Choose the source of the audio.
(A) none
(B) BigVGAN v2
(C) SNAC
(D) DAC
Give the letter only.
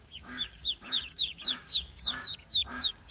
D